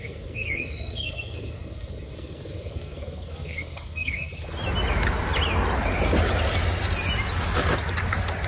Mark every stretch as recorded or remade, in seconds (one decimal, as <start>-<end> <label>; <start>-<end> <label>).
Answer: 0.0-4.3 remade; 4.3-8.5 recorded